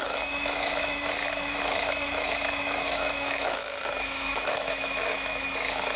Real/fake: fake